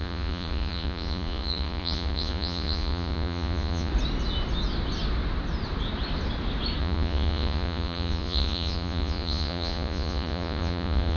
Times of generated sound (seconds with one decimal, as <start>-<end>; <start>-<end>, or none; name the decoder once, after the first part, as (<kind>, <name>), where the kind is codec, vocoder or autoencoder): 0.0-3.9 (vocoder, Vocos); 6.8-11.2